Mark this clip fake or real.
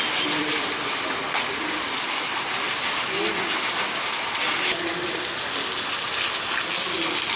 real